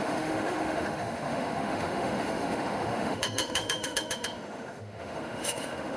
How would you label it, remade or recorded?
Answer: remade